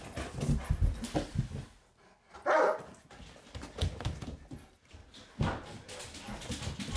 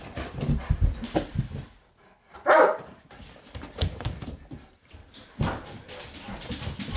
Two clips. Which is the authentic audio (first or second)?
first